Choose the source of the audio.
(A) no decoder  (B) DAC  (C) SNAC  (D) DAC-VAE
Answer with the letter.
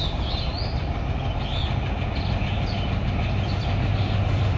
A